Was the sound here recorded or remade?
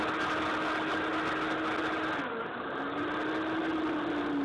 recorded